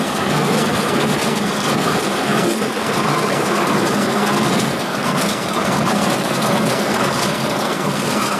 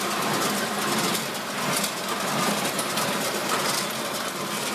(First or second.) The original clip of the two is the second